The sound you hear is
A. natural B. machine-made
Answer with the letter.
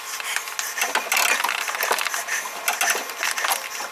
A